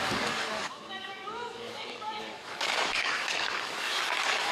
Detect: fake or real fake